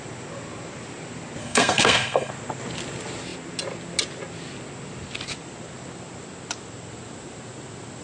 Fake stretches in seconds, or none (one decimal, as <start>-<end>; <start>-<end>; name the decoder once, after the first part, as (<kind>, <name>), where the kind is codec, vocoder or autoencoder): 1.4-2.3 (codec, SNAC)